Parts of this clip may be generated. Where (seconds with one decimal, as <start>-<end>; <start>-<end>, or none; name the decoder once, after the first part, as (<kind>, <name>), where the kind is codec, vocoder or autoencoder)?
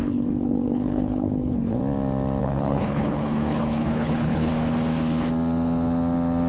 0.0-1.8 (codec, HILCodec); 2.4-4.5